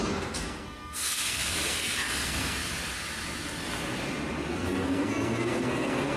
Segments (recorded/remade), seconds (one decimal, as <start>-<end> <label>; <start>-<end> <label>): 0.0-2.6 remade; 2.6-4.5 recorded; 4.5-6.2 remade